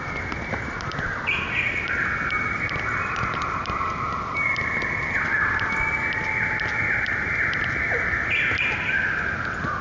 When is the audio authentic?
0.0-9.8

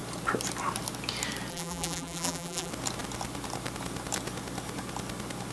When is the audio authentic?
0.0-1.5; 2.7-5.5

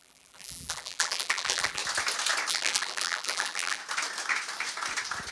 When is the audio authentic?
1.8-2.5; 3.8-5.3

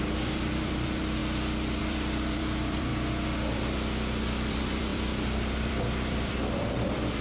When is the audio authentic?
1.2-1.8; 2.9-4.5

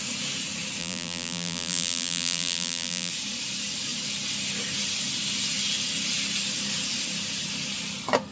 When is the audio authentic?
0.0-0.8; 3.1-8.3